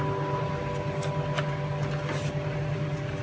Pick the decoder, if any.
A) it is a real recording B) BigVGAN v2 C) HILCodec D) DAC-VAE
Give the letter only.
A